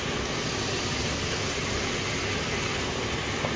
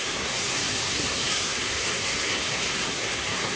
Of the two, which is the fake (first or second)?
second